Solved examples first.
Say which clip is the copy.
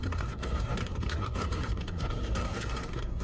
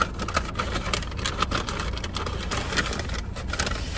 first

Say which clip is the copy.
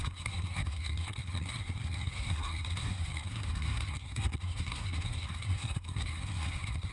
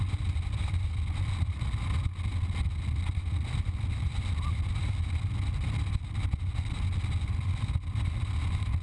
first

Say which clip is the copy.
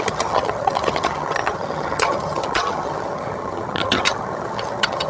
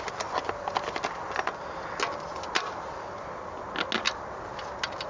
first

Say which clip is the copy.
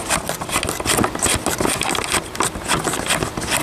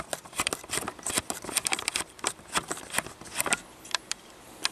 second